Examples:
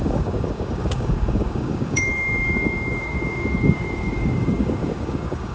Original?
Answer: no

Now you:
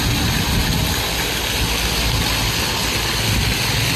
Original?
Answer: yes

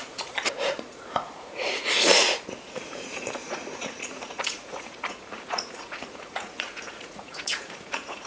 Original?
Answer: no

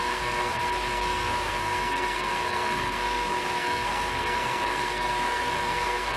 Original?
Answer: no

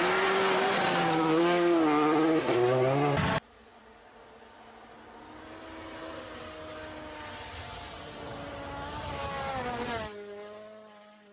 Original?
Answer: yes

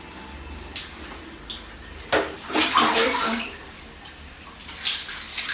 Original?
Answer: yes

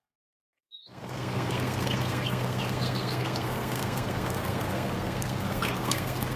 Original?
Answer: no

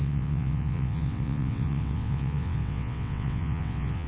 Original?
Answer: no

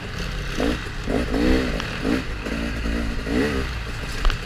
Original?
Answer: yes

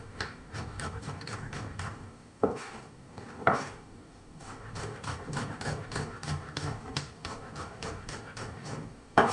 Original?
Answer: no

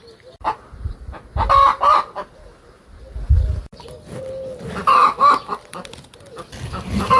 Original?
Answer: yes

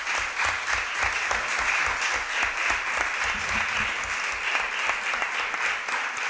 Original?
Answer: yes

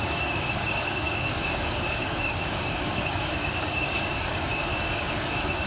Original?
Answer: no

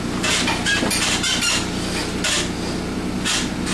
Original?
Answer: yes